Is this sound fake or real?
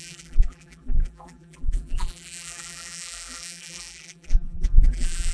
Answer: fake